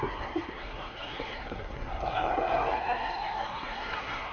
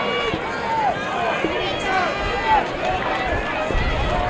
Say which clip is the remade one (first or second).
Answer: first